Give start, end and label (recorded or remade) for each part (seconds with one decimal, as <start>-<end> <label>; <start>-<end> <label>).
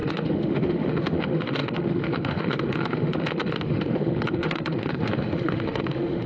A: 0.0-6.3 remade